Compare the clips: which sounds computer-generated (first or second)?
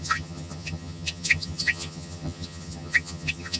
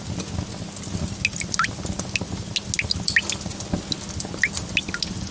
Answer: first